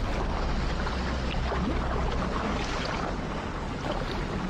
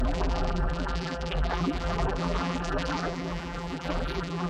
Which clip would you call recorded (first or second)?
first